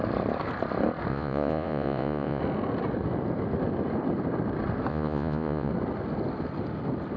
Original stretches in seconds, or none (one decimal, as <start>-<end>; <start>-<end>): 0.0-1.1; 2.4-4.9; 5.7-7.2